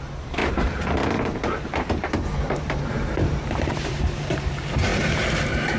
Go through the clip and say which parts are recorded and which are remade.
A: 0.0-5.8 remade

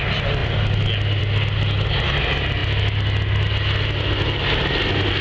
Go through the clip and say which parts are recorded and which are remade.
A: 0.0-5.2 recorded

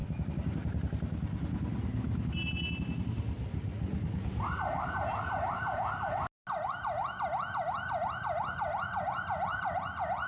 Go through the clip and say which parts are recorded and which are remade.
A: 0.0-10.3 recorded